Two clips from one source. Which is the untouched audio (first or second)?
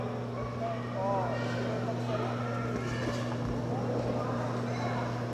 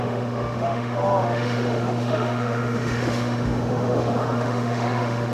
first